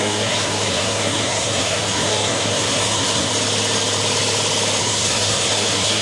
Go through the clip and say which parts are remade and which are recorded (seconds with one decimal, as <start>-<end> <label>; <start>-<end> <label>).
0.0-3.3 remade; 3.3-4.8 recorded; 4.8-6.0 remade